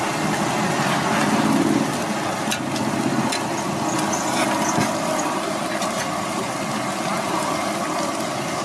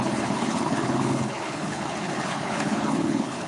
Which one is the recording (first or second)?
first